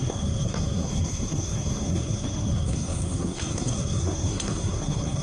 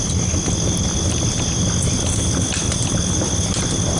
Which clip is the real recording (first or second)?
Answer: second